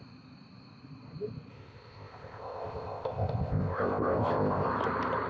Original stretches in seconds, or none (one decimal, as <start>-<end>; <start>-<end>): 0.0-1.5; 4.7-5.3